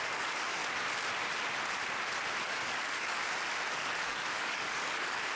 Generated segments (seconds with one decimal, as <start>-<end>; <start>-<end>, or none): 0.0-0.6; 2.4-3.2; 3.7-5.4

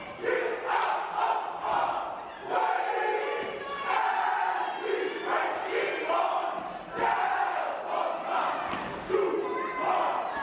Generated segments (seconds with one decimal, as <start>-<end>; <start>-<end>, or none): 7.3-7.8

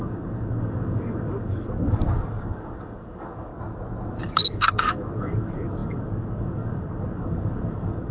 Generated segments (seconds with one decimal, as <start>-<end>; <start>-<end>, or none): 0.0-3.5; 4.2-8.1

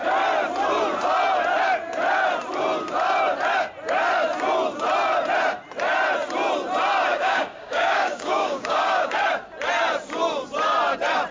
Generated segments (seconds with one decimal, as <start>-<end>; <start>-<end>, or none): 7.1-9.1

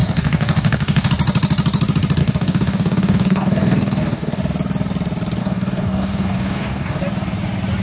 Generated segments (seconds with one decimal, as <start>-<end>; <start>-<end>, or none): 0.0-1.1; 2.2-4.4; 5.4-7.0

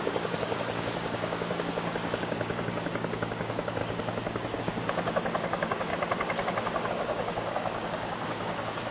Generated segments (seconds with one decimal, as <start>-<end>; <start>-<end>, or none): 0.0-3.8; 4.6-5.9; 6.9-8.9

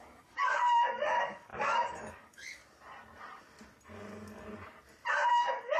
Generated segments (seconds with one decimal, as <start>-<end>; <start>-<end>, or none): 0.0-2.6; 5.3-5.8

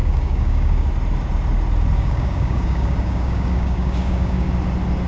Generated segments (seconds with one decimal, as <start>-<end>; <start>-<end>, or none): 0.0-0.9; 2.0-4.5